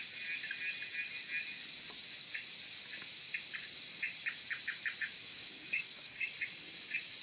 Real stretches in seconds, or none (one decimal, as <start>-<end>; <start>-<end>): 0.0-5.3; 6.3-7.2